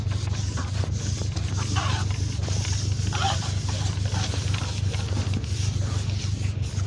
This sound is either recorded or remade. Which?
recorded